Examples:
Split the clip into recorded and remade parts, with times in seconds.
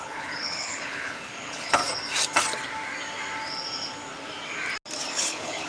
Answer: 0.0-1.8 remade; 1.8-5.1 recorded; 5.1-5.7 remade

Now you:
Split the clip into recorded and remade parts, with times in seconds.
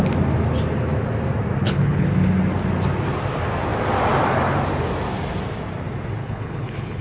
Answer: 0.0-1.6 recorded; 1.6-2.1 remade; 2.1-6.2 recorded; 6.2-7.0 remade